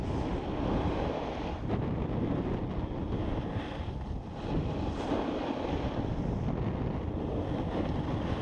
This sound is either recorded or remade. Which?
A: recorded